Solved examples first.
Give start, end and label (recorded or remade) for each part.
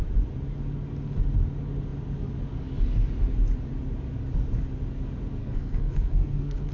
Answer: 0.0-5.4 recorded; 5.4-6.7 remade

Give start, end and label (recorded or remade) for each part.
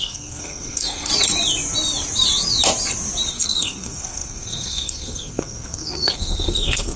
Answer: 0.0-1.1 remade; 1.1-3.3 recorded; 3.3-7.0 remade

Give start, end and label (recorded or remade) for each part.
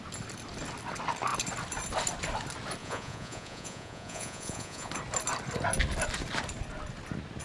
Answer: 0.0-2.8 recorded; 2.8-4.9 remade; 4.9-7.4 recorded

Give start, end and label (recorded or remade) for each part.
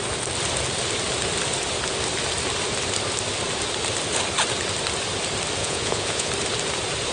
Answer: 0.0-5.6 recorded; 5.6-6.3 remade; 6.3-7.1 recorded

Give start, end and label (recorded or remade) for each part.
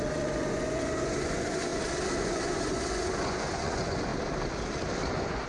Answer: 0.0-1.7 remade; 1.7-2.2 recorded; 2.2-4.1 remade; 4.1-5.1 recorded; 5.1-5.5 remade